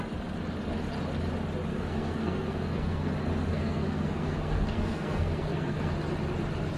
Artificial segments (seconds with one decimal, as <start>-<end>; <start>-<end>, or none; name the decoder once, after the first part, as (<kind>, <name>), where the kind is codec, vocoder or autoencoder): 1.7-3.1 (codec, SNAC); 3.5-5.9